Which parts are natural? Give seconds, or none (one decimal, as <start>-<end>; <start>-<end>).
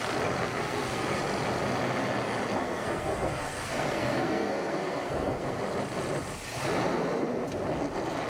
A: 0.0-0.4; 1.2-2.6; 5.6-8.3